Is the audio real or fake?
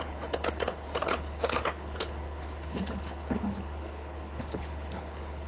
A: fake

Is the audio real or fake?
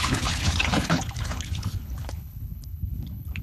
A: fake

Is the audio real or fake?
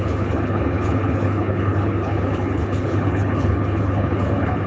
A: fake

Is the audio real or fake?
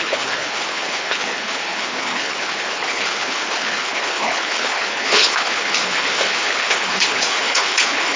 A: fake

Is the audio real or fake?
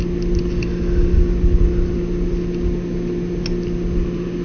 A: real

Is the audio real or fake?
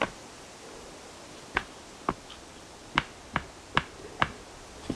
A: real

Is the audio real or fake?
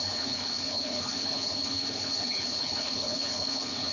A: fake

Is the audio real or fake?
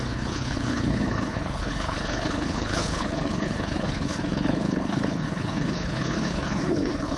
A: fake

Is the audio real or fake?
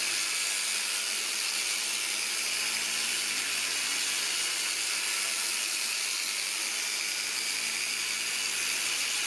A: real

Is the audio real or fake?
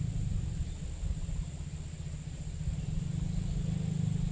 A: real